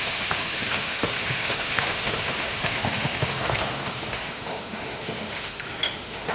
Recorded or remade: remade